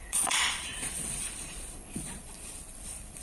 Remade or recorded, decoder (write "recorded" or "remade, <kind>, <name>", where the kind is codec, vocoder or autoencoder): remade, vocoder, Vocos